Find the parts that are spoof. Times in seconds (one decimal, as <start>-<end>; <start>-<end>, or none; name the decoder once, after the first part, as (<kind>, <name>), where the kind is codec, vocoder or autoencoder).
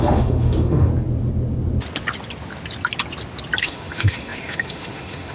0.0-0.9 (autoencoder, DAC-VAE); 3.6-5.3